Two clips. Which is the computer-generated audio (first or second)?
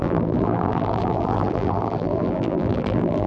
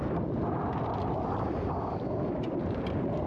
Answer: first